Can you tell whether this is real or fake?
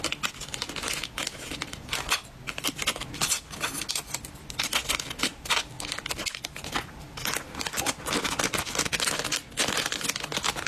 real